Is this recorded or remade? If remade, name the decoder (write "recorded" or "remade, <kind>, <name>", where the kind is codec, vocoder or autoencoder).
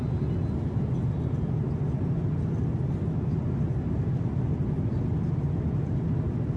recorded